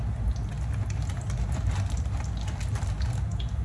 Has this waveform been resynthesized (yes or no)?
no